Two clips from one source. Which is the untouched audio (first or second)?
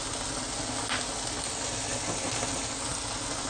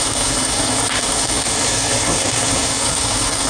first